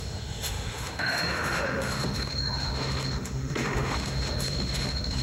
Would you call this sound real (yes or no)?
no